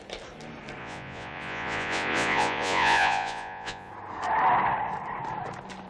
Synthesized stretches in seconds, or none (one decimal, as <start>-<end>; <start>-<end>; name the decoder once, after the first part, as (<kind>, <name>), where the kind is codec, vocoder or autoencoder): 0.8-3.9 (vocoder, Vocos)